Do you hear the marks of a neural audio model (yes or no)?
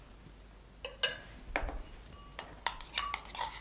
no